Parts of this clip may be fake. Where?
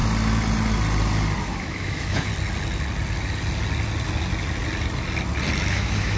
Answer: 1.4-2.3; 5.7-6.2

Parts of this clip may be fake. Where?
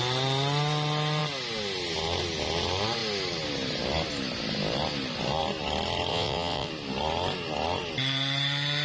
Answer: 6.1-6.7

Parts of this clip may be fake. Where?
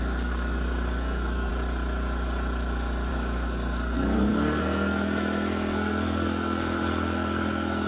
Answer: 0.0-1.5; 3.1-7.9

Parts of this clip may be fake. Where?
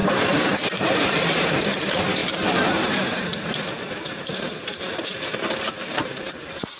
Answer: 0.0-6.8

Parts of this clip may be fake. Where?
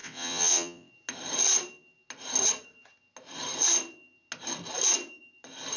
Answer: 0.0-0.9